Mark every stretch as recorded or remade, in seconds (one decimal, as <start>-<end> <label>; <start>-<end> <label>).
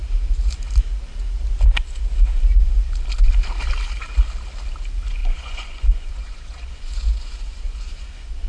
0.0-5.2 recorded; 5.2-8.5 remade